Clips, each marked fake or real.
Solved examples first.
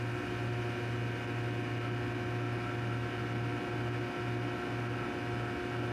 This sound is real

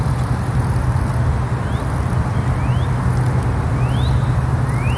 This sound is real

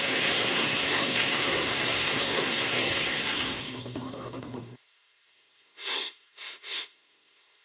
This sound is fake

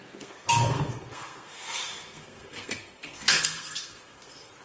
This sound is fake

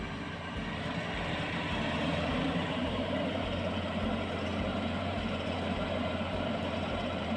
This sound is fake